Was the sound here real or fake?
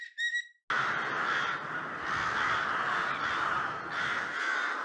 real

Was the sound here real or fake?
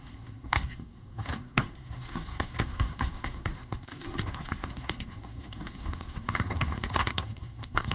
fake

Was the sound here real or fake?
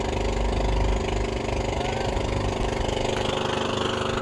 real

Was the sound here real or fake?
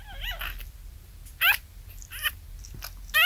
real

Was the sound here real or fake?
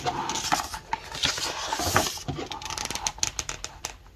real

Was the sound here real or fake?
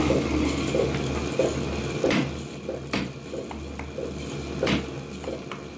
real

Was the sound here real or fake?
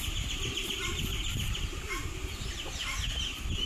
real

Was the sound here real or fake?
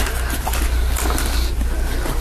real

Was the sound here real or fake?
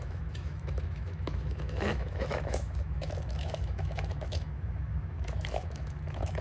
fake